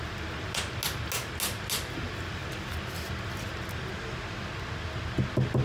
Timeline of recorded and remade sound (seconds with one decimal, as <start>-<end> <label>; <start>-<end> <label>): 0.0-5.6 recorded